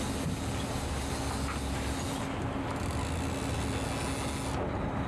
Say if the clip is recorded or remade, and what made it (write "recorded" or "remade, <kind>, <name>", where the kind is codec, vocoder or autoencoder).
recorded